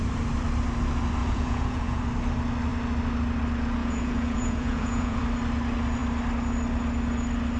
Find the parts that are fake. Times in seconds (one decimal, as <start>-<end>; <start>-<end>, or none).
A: 1.2-2.0; 3.8-5.2